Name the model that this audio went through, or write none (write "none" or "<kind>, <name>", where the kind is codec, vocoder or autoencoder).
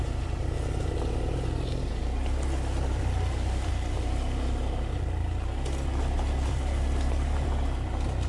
none